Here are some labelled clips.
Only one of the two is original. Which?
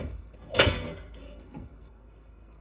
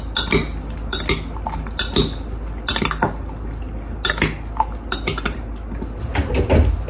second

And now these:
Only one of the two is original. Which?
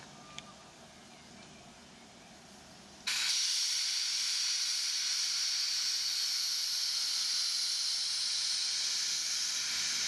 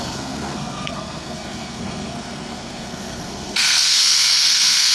first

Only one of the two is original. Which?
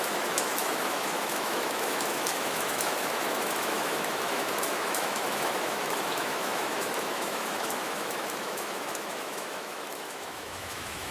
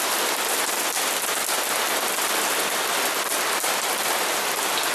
second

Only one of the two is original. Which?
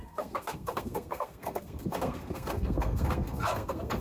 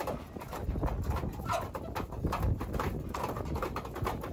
second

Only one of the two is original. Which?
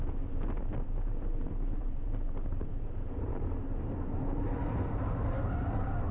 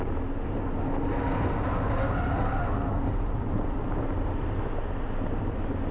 second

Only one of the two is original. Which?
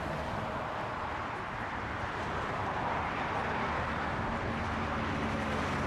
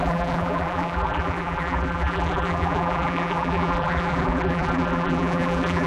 first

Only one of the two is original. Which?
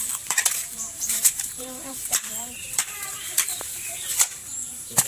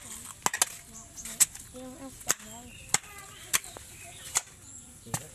second